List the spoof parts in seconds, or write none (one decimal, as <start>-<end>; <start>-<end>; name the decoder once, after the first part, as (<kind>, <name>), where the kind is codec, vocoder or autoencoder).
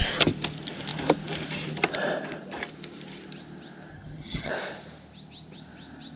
3.9-4.5 (vocoder, HiFi-GAN)